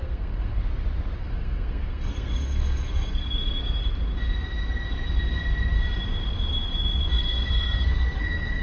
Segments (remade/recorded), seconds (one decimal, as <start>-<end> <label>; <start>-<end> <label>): 0.0-0.6 remade; 0.6-1.2 recorded; 1.2-3.8 remade; 3.8-7.2 recorded; 7.2-8.6 remade